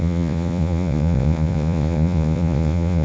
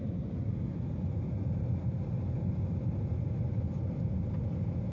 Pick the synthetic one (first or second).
first